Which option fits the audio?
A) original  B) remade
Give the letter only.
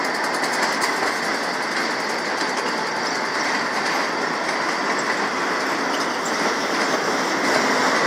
A